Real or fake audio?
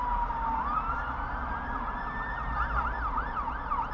real